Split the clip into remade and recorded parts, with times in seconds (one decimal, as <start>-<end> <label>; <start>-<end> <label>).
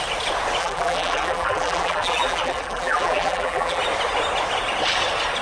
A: 0.0-0.6 recorded; 0.6-3.8 remade; 3.8-5.4 recorded